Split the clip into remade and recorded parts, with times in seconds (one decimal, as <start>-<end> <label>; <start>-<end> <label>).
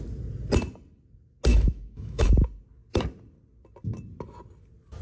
0.0-1.5 recorded; 1.5-2.3 remade; 2.3-5.0 recorded